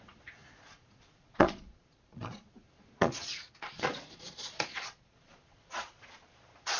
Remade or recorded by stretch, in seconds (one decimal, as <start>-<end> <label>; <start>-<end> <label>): 0.0-6.8 remade